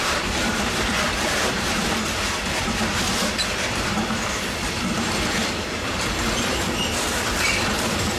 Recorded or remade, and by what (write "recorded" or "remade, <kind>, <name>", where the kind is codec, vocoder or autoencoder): remade, vocoder, BigVGAN v2